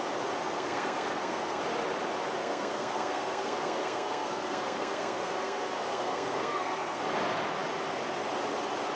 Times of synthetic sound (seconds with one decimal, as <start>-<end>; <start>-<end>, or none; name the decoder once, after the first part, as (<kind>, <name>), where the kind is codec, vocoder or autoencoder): 0.4-1.6 (codec, SNAC); 2.4-7.0